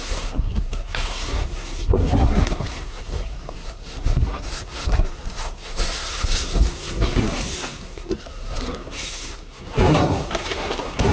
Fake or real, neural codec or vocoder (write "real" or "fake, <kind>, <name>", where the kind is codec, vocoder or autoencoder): fake, codec, SNAC